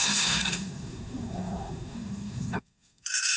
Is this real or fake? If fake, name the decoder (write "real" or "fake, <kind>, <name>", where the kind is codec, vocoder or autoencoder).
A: fake, codec, SNAC